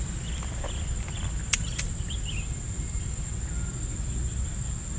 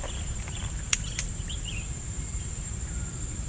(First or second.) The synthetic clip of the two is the second